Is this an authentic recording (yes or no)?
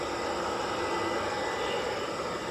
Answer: yes